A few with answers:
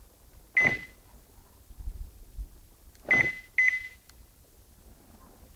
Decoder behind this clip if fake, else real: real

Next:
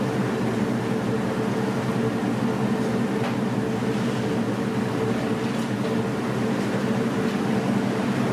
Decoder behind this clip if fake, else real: real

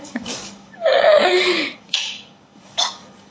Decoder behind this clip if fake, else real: fake, codec, DAC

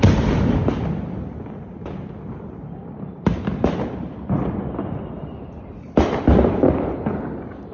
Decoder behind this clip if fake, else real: real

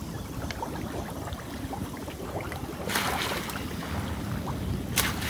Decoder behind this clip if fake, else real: fake, vocoder, BigVGAN v2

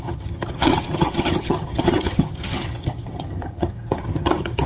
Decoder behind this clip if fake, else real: fake, vocoder, HiFi-GAN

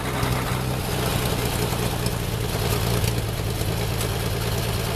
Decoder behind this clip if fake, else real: real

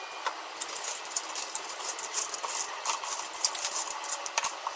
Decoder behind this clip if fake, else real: real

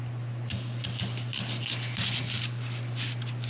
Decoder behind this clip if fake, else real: real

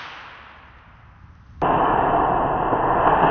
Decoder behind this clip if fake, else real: real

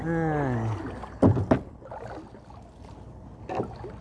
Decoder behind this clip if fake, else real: real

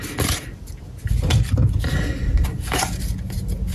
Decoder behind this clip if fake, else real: real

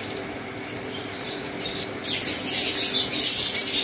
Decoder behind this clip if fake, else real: real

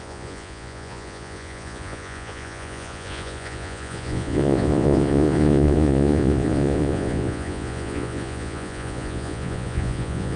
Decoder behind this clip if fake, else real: fake, vocoder, Vocos